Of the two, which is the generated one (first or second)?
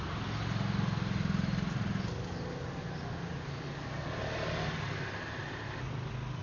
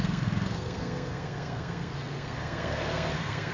second